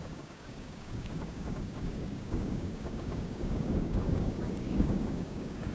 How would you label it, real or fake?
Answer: fake